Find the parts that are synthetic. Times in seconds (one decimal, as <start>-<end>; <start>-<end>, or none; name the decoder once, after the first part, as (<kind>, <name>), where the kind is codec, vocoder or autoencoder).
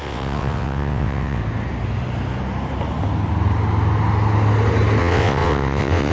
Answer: 0.0-1.4 (vocoder, WaveNeXt); 5.0-6.1